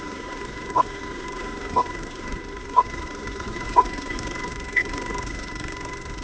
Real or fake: fake